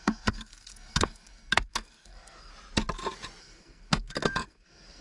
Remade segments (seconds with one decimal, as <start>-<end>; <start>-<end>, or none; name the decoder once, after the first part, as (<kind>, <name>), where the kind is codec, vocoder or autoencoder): 0.0-2.5 (codec, SNAC); 3.4-5.0